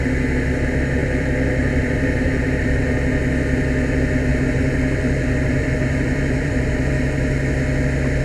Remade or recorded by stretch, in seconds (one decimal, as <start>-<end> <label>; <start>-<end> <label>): 0.0-1.0 recorded; 1.0-2.9 remade; 2.9-4.3 recorded; 4.3-6.8 remade; 6.8-8.2 recorded